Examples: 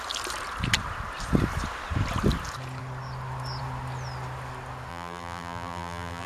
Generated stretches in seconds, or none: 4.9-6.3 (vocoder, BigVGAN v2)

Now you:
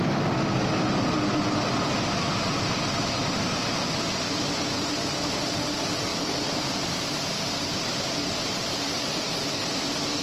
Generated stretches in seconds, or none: 6.1-6.6 (vocoder, BigVGAN v2)

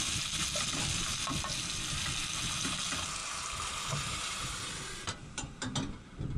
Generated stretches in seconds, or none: none

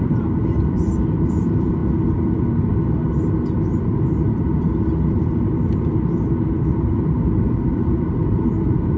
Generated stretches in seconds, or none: 0.0-1.8 (vocoder, BigVGAN v2); 6.7-9.0

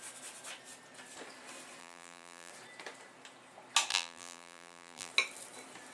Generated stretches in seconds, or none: 1.8-2.5 (vocoder, BigVGAN v2); 3.9-5.1

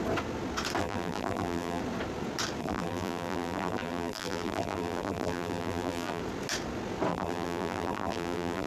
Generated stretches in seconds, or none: 0.8-1.8 (vocoder, BigVGAN v2); 2.6-6.2; 7.1-8.7

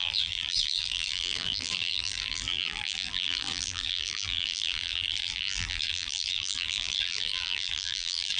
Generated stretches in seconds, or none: 0.0-8.4 (vocoder, BigVGAN v2)

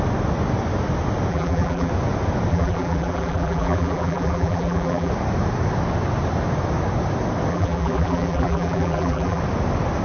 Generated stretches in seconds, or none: 1.3-1.9 (vocoder, BigVGAN v2); 2.5-5.1; 7.5-9.4